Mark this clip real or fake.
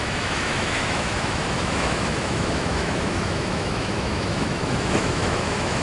fake